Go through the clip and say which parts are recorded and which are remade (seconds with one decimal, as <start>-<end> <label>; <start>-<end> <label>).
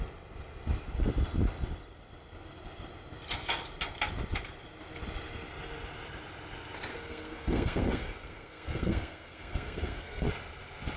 0.0-6.9 recorded; 6.9-10.3 remade; 10.3-11.0 recorded